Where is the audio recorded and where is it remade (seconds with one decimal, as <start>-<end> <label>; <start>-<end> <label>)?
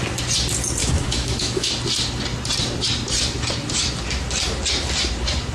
0.0-0.8 recorded; 0.8-1.7 remade; 1.7-5.5 recorded